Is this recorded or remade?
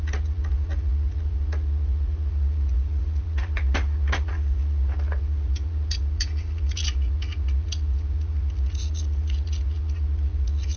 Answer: remade